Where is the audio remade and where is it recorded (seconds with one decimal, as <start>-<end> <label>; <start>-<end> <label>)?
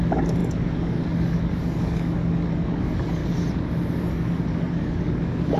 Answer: 0.0-3.2 remade; 3.2-4.0 recorded; 4.0-5.6 remade